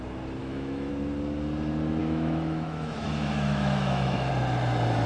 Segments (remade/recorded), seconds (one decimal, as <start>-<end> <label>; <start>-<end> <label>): 0.0-0.4 recorded; 0.4-0.9 remade; 0.9-2.0 recorded; 2.0-4.3 remade; 4.3-5.1 recorded